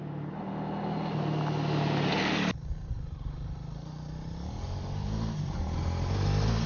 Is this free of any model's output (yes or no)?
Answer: yes